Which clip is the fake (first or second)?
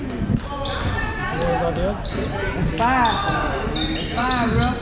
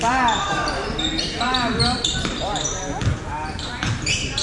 second